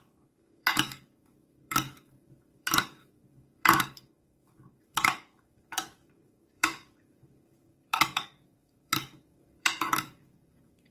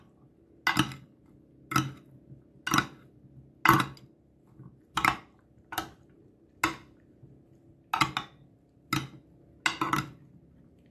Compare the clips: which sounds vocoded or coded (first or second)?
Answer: first